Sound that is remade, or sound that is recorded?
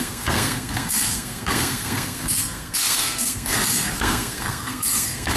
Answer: remade